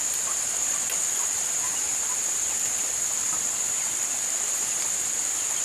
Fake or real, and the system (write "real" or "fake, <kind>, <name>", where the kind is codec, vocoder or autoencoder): fake, vocoder, BigVGAN v2